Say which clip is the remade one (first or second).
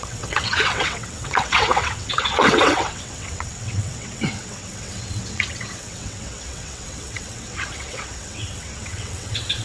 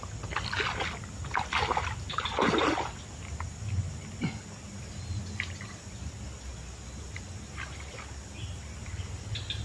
first